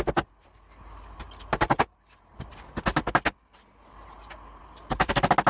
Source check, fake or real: real